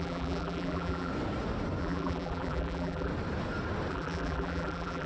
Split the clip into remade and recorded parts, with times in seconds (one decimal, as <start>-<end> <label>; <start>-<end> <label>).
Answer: 0.0-1.1 remade; 1.1-1.8 recorded; 1.8-3.1 remade; 3.1-3.9 recorded; 3.9-5.1 remade